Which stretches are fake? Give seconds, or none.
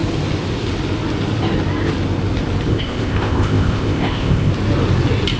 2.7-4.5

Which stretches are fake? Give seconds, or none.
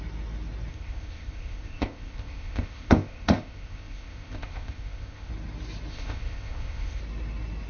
0.7-5.3; 5.9-7.0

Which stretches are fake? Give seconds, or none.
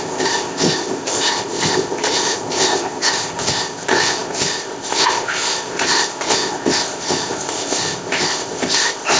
0.0-9.2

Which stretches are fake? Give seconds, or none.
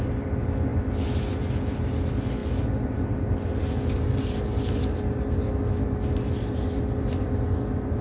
none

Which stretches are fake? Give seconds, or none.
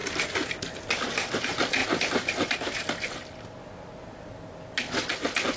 none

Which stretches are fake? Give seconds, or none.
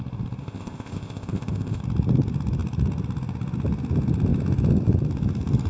0.4-1.8